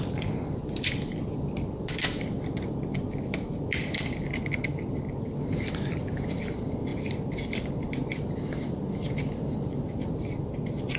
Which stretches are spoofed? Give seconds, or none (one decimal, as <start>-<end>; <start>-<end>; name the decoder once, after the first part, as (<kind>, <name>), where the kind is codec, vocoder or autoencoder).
0.0-0.6 (vocoder, BigVGAN v2); 1.8-11.0